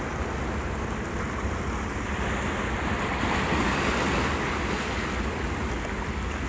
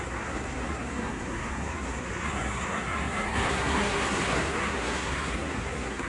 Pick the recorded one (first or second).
first